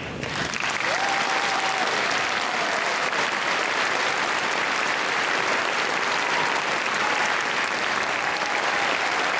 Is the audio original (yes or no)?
yes